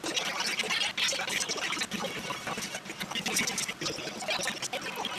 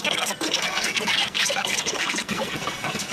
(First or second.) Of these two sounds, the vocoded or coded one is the second